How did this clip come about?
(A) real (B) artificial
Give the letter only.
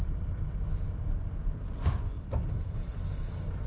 A